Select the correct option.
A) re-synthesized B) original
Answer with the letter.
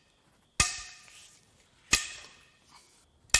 B